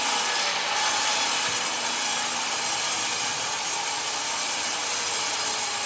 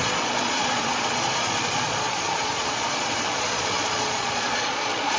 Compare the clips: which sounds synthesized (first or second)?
second